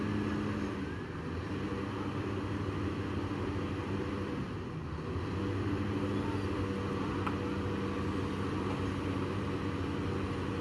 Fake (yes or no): no